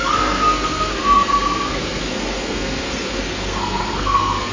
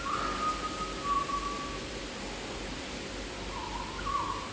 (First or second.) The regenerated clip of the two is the first